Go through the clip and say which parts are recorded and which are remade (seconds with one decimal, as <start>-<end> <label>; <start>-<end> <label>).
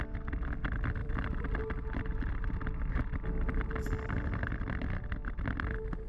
0.0-1.0 recorded; 1.0-1.6 remade; 1.6-6.1 recorded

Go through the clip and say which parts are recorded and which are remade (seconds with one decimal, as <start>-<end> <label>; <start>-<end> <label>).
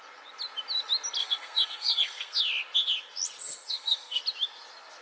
0.0-1.2 recorded; 1.2-2.4 remade; 2.4-3.4 recorded; 3.4-4.2 remade; 4.2-5.0 recorded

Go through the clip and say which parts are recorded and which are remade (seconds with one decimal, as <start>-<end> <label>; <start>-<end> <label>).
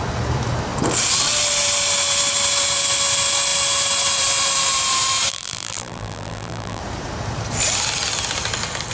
0.0-5.3 recorded; 5.3-6.8 remade; 6.8-8.9 recorded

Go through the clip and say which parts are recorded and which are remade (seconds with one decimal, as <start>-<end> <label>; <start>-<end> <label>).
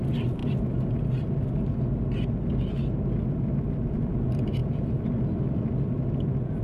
0.0-6.6 recorded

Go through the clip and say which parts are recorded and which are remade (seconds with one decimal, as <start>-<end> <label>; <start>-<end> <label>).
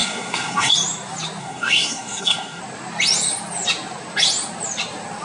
0.0-0.7 remade; 0.7-1.4 recorded; 1.4-2.6 remade; 2.6-5.2 recorded